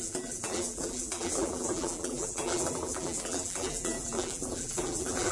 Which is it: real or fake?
fake